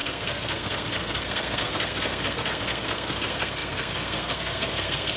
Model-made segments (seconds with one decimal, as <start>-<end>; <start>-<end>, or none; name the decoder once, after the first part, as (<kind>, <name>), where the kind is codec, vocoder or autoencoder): 0.0-5.2 (codec, SNAC)